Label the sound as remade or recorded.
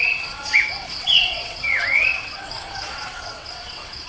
remade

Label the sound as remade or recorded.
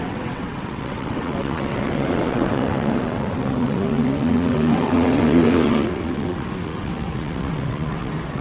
remade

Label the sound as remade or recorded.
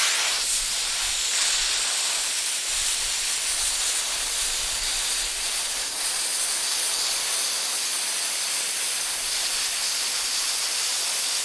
recorded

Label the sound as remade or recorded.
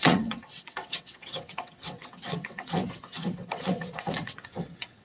remade